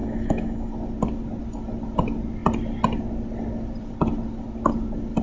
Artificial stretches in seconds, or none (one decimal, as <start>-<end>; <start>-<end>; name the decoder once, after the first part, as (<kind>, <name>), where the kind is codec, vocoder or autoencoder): 0.0-0.7 (autoencoder, DAC-VAE)